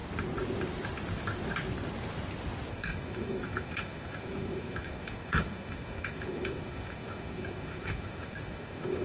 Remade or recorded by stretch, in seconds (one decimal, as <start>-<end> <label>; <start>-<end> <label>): 0.0-2.7 recorded; 2.7-9.0 remade